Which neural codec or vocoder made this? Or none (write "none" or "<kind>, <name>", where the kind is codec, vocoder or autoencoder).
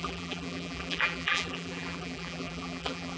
vocoder, BigVGAN v2